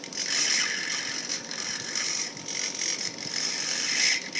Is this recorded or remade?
recorded